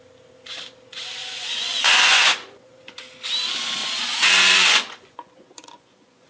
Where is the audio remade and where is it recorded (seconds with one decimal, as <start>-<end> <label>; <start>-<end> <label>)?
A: 0.0-1.2 recorded; 1.2-3.0 remade; 3.0-3.8 recorded; 3.8-6.3 remade